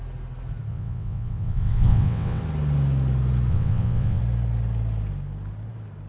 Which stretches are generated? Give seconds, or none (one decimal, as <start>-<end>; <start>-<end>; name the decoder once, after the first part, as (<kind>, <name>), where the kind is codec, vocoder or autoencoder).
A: 0.7-2.4 (vocoder, WaveNeXt); 3.5-4.2